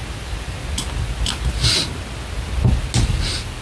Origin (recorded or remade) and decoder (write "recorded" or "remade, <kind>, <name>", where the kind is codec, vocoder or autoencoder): recorded